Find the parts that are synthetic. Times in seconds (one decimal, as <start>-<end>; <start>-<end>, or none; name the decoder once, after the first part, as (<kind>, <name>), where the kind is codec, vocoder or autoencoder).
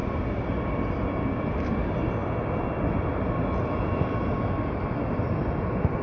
none